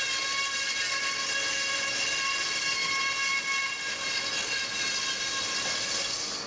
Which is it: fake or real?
real